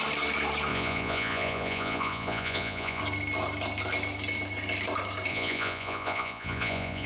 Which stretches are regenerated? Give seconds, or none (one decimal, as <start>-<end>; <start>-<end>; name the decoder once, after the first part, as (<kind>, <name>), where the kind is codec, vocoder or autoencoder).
0.7-3.0 (vocoder, Vocos); 5.3-7.1